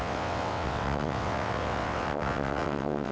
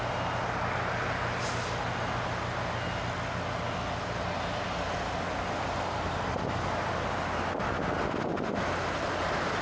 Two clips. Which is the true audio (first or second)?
second